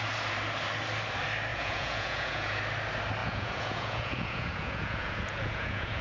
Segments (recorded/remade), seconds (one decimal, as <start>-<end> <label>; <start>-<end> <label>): 0.0-1.5 recorded; 1.5-2.6 remade; 2.6-3.2 recorded; 3.2-6.0 remade